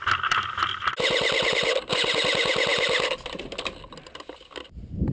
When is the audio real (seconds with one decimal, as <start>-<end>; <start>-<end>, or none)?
0.0-5.1